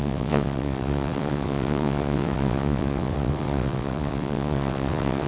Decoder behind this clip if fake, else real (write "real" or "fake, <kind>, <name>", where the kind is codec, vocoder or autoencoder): fake, vocoder, WaveNeXt